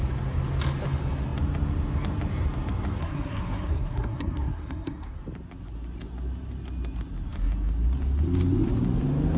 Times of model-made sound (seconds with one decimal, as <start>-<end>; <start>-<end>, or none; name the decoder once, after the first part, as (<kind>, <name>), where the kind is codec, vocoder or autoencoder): 3.0-5.2 (codec, SNAC)